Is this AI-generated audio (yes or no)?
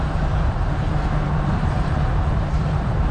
yes